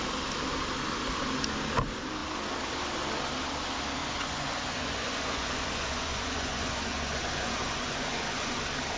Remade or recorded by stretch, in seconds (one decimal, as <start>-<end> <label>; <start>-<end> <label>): 0.0-4.0 recorded; 4.0-8.6 remade; 8.6-9.0 recorded